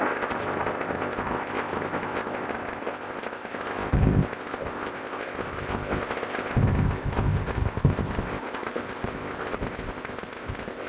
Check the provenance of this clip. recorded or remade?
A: remade